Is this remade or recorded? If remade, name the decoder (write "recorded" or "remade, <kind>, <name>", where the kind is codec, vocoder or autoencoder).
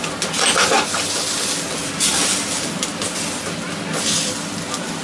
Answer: recorded